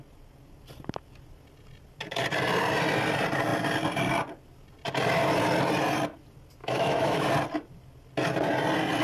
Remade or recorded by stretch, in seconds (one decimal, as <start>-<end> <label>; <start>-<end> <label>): 0.0-6.6 recorded; 6.6-7.3 remade; 7.3-9.0 recorded

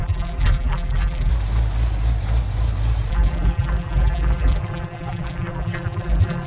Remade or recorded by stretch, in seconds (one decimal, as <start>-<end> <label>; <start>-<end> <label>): 0.0-1.3 remade; 1.3-3.1 recorded; 3.1-6.5 remade

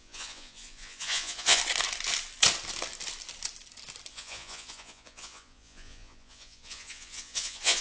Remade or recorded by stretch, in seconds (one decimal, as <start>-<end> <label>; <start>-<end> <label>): 0.0-1.6 remade; 1.6-4.1 recorded; 4.1-7.8 remade

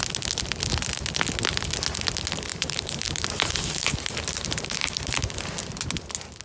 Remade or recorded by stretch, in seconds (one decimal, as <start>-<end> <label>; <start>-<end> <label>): 0.0-2.5 recorded; 2.5-5.4 remade; 5.4-6.4 recorded

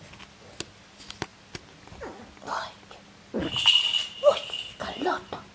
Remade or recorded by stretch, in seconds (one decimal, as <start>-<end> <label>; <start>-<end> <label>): 0.0-5.5 recorded